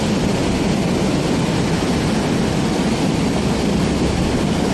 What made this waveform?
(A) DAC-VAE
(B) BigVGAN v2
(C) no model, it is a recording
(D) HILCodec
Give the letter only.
C